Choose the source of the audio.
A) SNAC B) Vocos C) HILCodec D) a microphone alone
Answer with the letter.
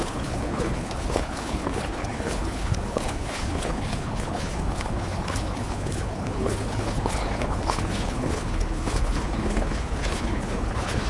C